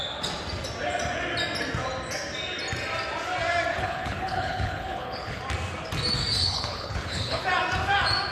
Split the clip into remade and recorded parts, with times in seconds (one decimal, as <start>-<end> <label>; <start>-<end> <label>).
0.0-3.7 recorded; 3.7-5.4 remade; 5.4-6.4 recorded; 6.4-7.4 remade; 7.4-8.3 recorded